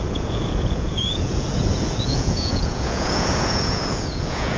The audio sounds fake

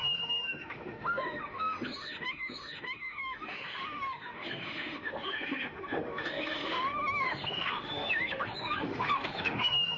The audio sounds fake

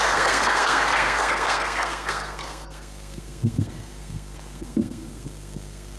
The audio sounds fake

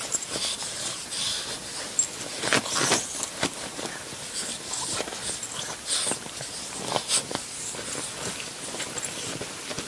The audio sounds real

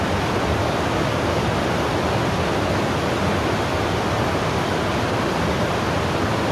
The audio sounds real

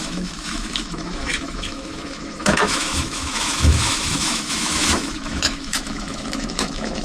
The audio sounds fake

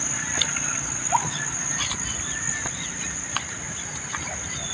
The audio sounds real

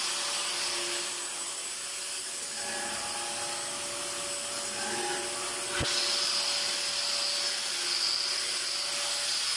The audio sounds real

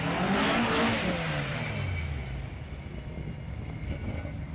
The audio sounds real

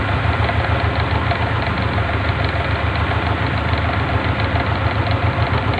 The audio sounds real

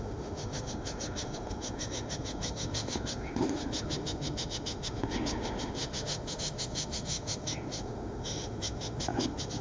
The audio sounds fake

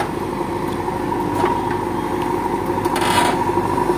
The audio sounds real